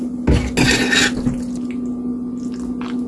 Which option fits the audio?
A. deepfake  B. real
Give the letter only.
B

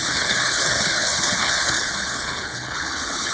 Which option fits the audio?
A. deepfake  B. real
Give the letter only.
A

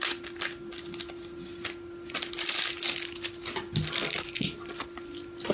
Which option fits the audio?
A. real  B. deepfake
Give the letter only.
A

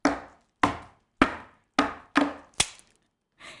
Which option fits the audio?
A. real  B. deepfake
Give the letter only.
A